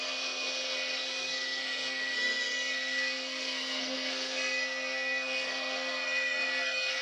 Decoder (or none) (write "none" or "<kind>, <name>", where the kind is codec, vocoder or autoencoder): codec, SNAC